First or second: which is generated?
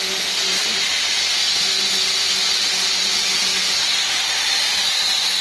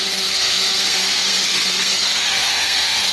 second